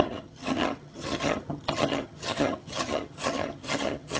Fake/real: fake